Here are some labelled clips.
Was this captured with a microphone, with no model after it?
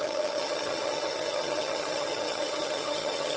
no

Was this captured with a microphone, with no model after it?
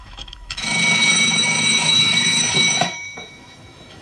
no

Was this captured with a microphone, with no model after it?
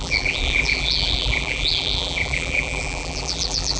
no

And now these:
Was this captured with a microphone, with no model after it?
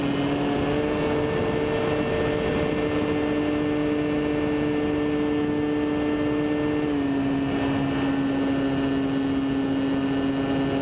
yes